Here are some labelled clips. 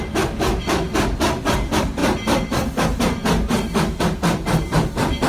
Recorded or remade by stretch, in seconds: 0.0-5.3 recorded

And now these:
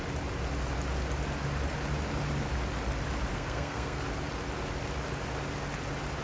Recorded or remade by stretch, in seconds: 0.0-3.3 recorded; 3.3-4.0 remade; 4.0-6.2 recorded

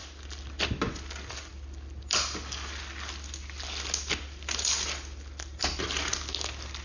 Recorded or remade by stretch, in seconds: 0.0-6.8 recorded

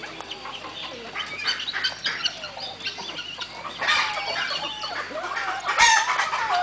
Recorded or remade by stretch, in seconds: 0.0-6.6 recorded

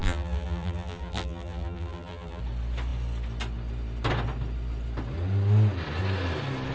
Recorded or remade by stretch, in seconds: 0.0-2.4 remade; 2.4-6.7 recorded

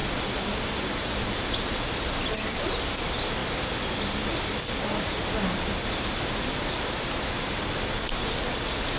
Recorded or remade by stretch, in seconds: 0.0-1.5 remade; 1.5-9.0 recorded

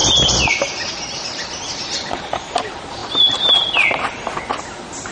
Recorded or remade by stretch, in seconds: 0.0-5.1 recorded

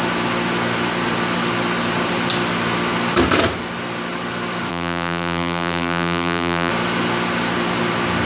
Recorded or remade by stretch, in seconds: 0.0-4.7 recorded; 4.7-6.7 remade; 6.7-8.3 recorded